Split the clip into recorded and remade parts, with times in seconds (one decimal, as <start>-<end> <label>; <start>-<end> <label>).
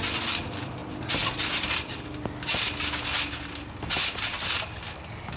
0.0-0.8 remade; 0.8-4.0 recorded; 4.0-5.4 remade